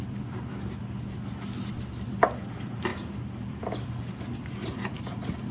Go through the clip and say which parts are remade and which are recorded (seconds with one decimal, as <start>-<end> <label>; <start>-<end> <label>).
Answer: 0.0-0.5 remade; 0.5-1.6 recorded; 1.6-5.5 remade

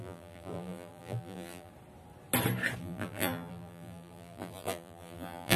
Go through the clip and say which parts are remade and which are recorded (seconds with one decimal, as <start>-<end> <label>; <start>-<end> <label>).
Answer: 0.0-1.7 remade; 1.7-2.8 recorded; 2.8-5.6 remade

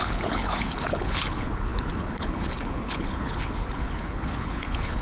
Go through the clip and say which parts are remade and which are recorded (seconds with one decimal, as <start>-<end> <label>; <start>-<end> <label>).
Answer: 0.0-5.0 remade

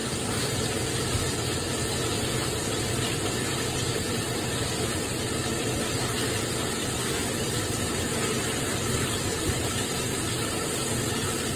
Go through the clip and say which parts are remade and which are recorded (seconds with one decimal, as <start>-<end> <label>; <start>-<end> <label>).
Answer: 0.0-11.6 recorded

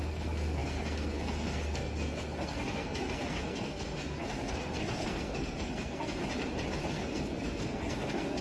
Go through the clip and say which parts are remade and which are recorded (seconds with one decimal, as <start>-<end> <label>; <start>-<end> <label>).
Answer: 0.0-6.2 remade; 6.2-6.9 recorded; 6.9-8.4 remade

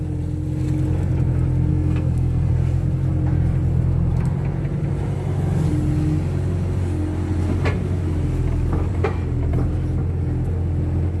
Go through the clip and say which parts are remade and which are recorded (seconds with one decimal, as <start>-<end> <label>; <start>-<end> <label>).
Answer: 0.0-1.7 recorded; 1.7-2.5 remade; 2.5-11.2 recorded